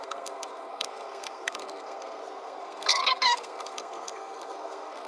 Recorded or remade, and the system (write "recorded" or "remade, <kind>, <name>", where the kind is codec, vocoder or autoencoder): remade, codec, SNAC